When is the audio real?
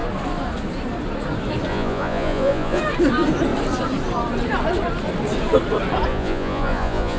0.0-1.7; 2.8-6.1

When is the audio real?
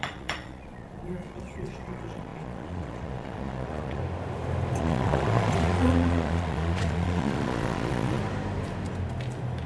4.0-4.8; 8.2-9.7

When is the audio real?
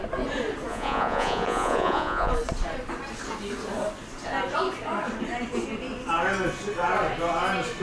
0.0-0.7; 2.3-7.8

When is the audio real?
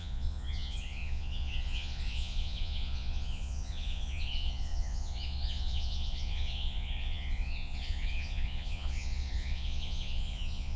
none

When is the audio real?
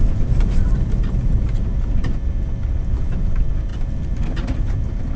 0.0-5.2